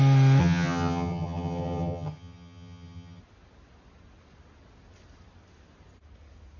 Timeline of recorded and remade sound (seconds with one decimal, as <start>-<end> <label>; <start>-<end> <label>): 0.0-0.4 recorded; 0.4-3.2 remade; 3.2-6.6 recorded